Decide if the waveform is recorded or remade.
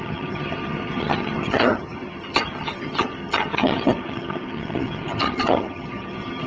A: remade